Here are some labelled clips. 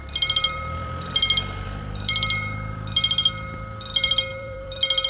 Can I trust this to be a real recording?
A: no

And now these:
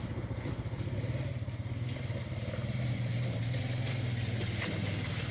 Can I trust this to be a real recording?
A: yes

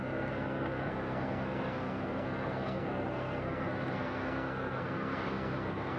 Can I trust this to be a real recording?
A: no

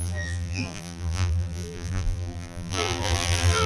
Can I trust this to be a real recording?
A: no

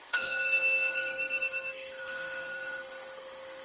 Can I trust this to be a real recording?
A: no